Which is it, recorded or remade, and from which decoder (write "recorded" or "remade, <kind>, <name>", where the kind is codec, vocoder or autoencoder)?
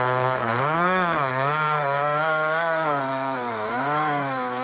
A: remade, codec, SNAC